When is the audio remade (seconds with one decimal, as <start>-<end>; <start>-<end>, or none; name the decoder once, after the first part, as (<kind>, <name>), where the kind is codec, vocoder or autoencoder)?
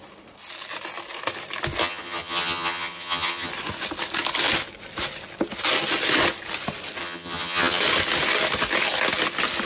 1.8-3.5 (vocoder, HiFi-GAN); 7.0-7.8